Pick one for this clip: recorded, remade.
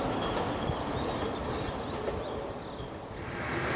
recorded